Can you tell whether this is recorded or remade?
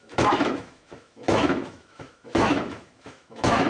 remade